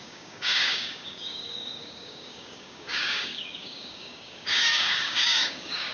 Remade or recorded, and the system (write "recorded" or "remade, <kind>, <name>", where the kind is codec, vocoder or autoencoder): remade, codec, DAC